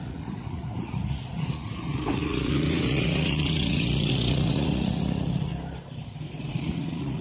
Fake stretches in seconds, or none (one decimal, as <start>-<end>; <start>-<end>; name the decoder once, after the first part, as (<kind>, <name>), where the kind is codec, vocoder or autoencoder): 0.0-5.5 (vocoder, Vocos); 6.5-7.2

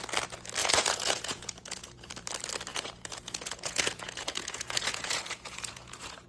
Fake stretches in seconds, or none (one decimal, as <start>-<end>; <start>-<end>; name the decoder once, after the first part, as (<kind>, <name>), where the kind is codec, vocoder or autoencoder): 0.6-2.1 (vocoder, Vocos); 2.7-6.3

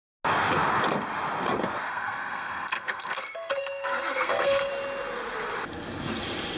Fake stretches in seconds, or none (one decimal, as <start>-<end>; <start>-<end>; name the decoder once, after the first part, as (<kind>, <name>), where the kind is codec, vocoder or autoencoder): 1.9-4.7 (codec, SNAC)

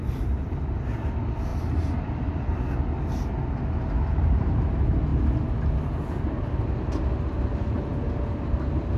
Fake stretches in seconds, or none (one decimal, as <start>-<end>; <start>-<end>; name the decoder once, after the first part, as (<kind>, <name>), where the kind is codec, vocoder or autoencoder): none